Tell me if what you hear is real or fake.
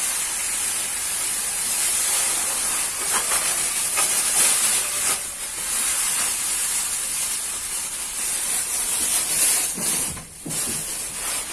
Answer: real